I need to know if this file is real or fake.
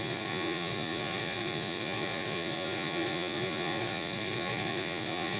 fake